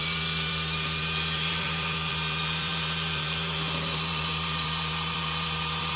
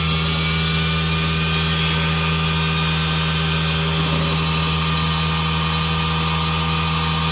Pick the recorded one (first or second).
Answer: second